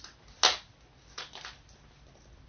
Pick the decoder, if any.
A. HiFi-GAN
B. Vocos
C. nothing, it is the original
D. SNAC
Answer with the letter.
C